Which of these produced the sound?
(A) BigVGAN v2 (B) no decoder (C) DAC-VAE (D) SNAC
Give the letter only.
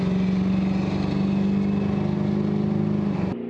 B